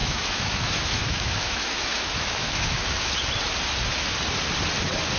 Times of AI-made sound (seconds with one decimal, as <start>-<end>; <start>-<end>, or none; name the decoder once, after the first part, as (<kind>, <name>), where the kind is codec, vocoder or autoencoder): 0.0-3.1 (autoencoder, DAC-VAE)